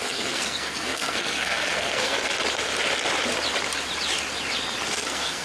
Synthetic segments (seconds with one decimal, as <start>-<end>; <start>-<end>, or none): 0.0-2.3; 4.9-5.4

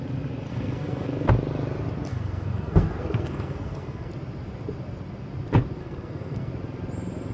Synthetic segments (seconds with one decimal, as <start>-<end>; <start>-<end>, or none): 0.5-1.3; 2.1-4.1; 5.8-6.5

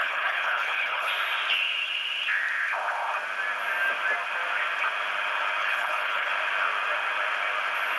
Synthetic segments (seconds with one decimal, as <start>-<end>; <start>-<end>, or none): 0.0-1.1; 5.6-6.3

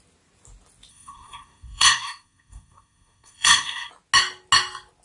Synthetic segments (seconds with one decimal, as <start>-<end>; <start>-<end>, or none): 0.9-3.9

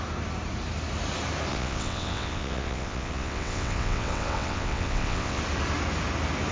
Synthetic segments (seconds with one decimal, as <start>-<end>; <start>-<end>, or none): 1.5-5.4